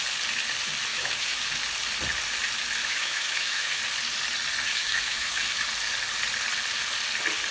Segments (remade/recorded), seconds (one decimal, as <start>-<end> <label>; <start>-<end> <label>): 0.0-0.9 recorded; 0.9-1.4 remade; 1.4-2.8 recorded; 2.8-3.8 remade; 3.8-4.7 recorded; 4.7-5.6 remade; 5.6-7.5 recorded